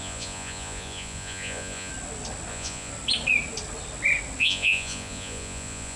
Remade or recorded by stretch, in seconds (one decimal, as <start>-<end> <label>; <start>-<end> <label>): 0.0-1.9 remade; 1.9-2.5 recorded; 2.5-2.9 remade; 2.9-4.4 recorded; 4.4-6.0 remade